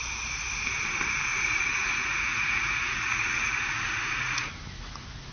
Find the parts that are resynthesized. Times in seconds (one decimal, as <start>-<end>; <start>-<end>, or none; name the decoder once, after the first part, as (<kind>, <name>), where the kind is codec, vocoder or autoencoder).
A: 1.3-4.5 (vocoder, Vocos)

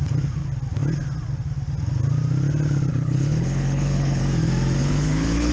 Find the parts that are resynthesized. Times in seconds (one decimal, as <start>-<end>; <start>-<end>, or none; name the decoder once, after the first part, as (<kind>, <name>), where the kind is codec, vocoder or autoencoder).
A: 2.9-4.2 (codec, HILCodec); 4.8-5.5

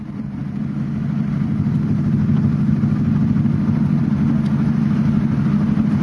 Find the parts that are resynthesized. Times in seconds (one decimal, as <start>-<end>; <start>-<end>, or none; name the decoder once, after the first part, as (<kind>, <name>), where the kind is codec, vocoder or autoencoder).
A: none

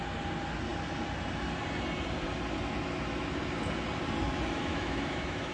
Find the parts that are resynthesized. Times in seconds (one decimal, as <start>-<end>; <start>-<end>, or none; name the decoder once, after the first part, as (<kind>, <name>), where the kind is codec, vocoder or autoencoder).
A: 4.6-5.5 (autoencoder, DAC-VAE)

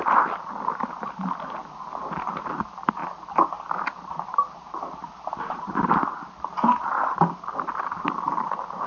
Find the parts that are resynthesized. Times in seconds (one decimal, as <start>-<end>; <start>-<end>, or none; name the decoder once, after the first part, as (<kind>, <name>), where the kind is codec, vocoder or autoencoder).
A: none

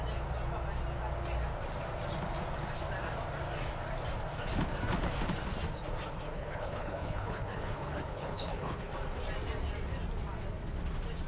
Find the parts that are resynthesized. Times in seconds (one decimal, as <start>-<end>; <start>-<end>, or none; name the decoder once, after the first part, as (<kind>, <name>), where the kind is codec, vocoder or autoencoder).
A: 6.3-8.9 (codec, HILCodec)

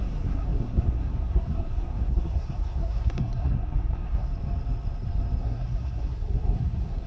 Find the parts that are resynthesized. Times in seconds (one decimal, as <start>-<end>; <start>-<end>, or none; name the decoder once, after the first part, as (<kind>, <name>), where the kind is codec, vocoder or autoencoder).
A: 0.0-4.3 (codec, SNAC); 5.4-7.1

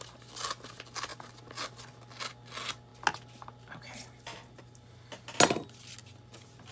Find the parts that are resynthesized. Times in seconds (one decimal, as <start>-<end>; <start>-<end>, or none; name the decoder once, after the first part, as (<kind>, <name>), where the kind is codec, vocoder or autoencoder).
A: none